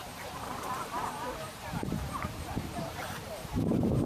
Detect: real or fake fake